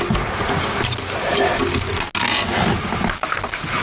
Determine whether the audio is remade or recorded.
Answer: recorded